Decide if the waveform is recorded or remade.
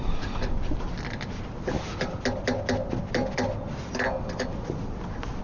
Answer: recorded